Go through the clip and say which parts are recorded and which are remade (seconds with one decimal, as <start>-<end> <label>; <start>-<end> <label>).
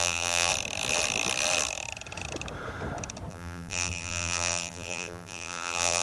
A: 0.0-0.5 remade; 0.5-3.3 recorded; 3.3-6.0 remade